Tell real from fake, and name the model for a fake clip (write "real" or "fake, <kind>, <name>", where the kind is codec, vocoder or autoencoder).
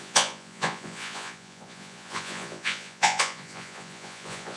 fake, vocoder, Vocos